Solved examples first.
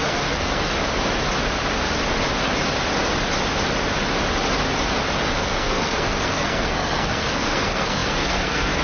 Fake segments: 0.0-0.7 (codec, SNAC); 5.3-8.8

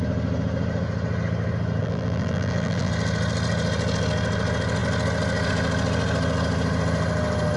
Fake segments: 1.8-2.9 (vocoder, BigVGAN v2)

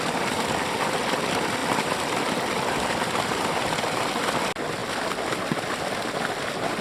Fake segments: none

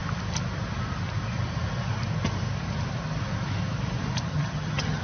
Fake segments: 4.3-5.0 (vocoder, HiFi-GAN)

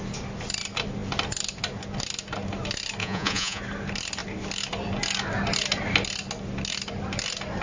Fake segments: 3.0-3.6 (vocoder, Vocos)

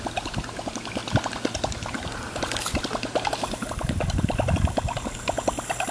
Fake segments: none

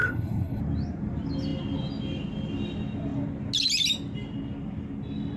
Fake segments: 0.0-0.6 (codec, HILCodec)

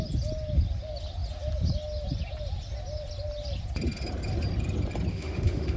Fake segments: 5.1-5.8 (autoencoder, DAC-VAE)